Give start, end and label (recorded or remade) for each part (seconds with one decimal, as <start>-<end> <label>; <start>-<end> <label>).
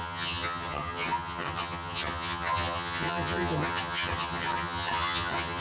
0.0-5.6 remade